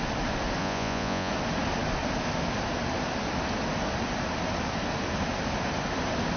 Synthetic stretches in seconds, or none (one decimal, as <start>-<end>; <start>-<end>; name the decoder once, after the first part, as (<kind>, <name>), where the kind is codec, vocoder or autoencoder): 0.6-1.3 (vocoder, Vocos)